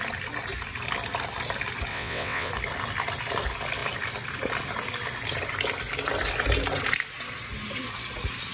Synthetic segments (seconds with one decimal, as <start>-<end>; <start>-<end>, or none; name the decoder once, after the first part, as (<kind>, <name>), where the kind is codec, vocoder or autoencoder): 1.9-2.5 (vocoder, WaveNeXt)